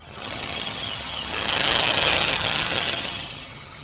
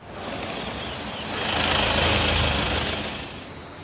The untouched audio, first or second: second